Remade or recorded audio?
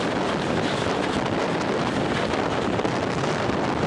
recorded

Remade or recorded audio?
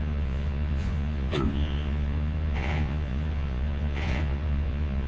remade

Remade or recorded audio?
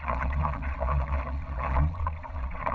remade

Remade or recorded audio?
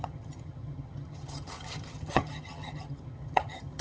remade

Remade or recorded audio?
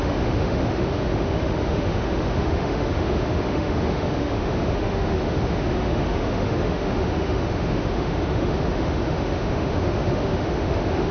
remade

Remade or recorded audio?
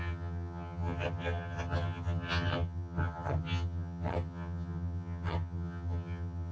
remade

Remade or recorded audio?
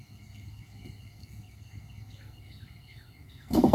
remade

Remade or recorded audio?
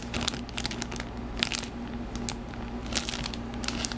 recorded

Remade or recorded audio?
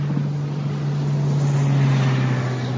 recorded